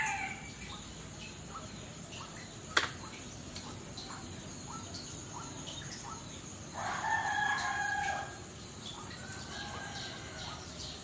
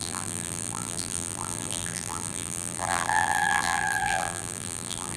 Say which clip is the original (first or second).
first